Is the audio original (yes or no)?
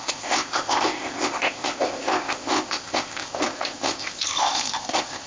no